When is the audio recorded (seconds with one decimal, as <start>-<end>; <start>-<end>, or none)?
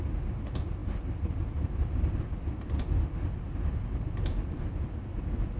0.0-5.6